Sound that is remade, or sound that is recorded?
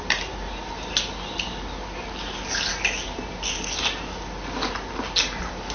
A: recorded